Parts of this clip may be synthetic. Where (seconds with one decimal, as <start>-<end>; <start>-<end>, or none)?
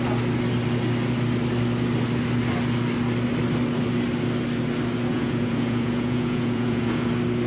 5.1-7.1